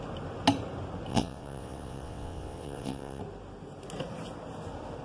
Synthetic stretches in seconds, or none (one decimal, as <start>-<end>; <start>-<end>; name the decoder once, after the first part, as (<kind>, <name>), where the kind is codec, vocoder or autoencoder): 1.1-3.2 (vocoder, WaveNeXt)